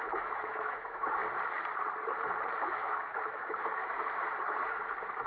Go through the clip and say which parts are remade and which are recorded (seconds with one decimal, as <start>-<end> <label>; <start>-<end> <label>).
0.0-1.2 remade; 1.2-2.5 recorded; 2.5-3.8 remade; 3.8-5.3 recorded

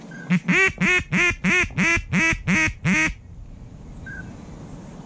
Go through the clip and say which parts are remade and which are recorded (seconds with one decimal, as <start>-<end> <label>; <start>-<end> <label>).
0.0-5.1 recorded

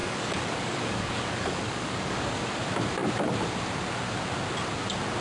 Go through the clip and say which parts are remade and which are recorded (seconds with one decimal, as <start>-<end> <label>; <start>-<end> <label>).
0.0-2.6 remade; 2.6-5.2 recorded